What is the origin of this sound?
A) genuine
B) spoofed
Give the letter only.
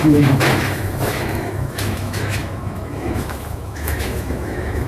B